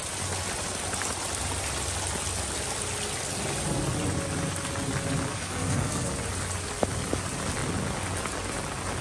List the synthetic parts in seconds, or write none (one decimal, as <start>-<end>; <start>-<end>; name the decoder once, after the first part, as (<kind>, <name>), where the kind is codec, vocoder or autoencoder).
5.3-6.1 (codec, SNAC)